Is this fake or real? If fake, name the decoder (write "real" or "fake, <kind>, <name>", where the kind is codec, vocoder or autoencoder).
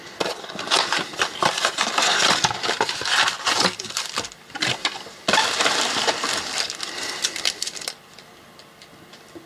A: fake, vocoder, BigVGAN v2